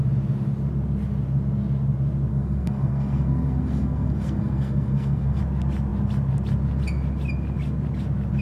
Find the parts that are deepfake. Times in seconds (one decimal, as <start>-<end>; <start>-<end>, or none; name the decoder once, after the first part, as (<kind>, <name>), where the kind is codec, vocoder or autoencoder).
2.3-5.4 (codec, SNAC)